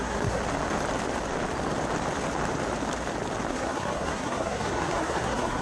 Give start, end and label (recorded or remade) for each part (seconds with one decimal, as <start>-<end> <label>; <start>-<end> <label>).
0.0-0.4 remade; 0.4-3.5 recorded; 3.5-5.6 remade